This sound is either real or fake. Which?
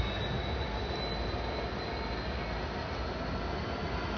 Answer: real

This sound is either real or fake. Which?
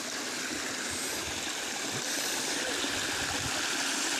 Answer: real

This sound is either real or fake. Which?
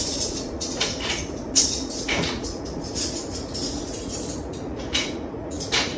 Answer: fake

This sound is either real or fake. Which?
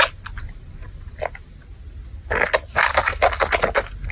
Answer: real